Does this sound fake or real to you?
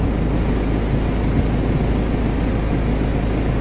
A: real